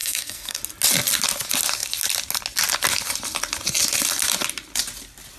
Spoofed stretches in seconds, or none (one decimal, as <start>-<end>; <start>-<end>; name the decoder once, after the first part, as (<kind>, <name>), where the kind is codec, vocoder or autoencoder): 0.0-0.6 (codec, SNAC)